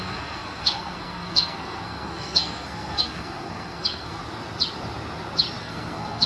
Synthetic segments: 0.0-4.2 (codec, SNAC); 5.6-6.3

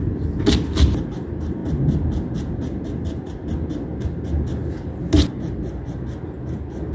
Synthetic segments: none

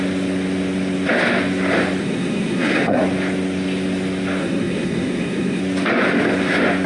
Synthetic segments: 2.0-3.0 (codec, SNAC); 4.4-5.6